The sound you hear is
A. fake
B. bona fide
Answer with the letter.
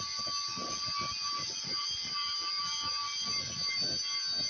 B